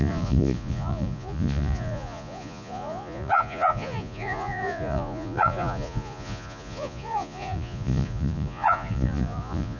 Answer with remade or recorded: remade